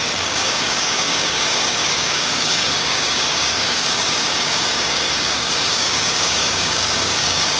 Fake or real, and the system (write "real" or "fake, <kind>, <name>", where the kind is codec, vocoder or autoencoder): fake, codec, DAC